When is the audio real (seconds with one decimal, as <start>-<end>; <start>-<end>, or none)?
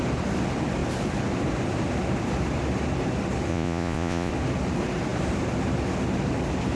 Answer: 0.0-3.5; 4.3-6.8